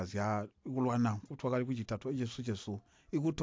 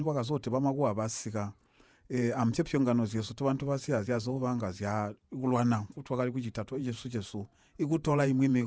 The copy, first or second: second